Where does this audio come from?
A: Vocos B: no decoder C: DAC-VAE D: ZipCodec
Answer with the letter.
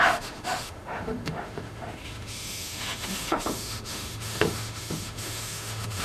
C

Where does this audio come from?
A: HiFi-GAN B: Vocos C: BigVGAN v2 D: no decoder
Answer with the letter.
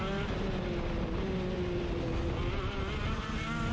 D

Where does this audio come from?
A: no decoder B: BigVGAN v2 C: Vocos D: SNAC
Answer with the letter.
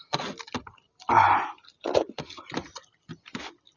A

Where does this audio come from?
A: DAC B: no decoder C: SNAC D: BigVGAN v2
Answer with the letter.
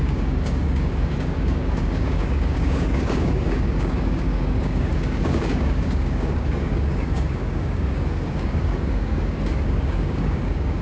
A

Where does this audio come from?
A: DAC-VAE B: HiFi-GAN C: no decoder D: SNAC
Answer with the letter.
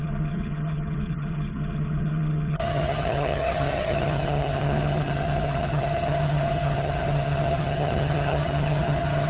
B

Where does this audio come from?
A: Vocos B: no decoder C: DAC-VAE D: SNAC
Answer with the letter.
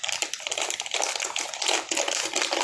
B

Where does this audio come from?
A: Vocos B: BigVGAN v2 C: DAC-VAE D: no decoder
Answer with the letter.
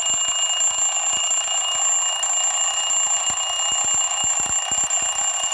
D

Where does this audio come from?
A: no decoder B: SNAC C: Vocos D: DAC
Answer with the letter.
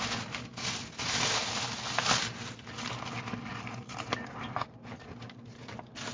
A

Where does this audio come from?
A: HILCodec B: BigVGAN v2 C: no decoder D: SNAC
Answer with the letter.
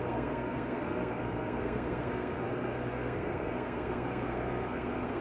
D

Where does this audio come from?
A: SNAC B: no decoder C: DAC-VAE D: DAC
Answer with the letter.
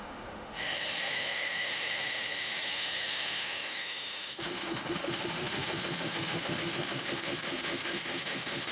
C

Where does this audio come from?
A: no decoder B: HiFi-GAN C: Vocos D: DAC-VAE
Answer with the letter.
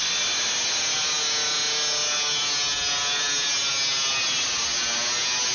A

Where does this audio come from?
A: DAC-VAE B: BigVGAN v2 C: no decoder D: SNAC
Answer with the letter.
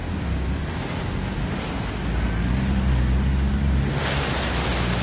C